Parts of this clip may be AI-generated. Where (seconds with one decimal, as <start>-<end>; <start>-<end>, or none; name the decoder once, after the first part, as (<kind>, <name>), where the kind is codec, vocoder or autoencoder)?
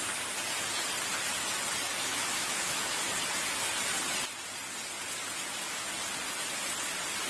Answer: 2.0-3.1 (autoencoder, DAC-VAE)